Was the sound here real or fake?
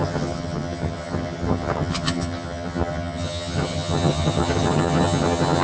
fake